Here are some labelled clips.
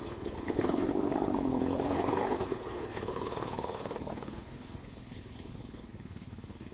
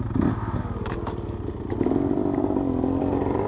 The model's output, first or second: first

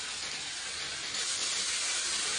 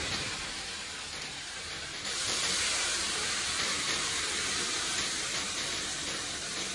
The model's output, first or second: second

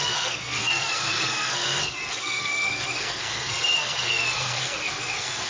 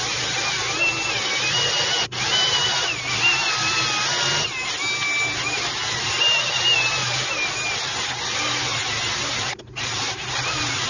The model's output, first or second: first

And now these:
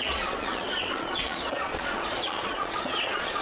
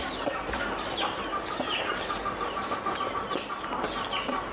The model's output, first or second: first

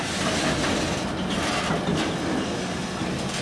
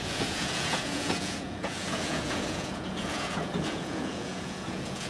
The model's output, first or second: second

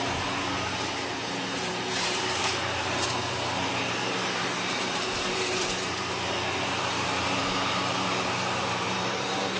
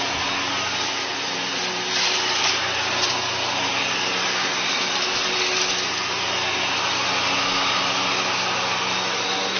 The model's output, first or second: first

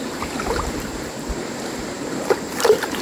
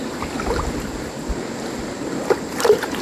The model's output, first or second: first